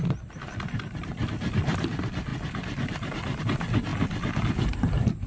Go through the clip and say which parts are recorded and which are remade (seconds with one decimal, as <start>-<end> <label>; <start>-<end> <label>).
0.0-5.3 recorded